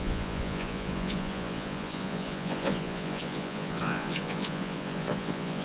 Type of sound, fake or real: fake